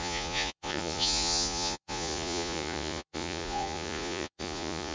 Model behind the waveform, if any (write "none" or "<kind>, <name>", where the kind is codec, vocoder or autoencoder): vocoder, Vocos